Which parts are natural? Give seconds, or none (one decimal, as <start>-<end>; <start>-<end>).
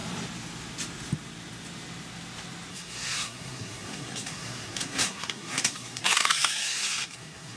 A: 0.0-2.7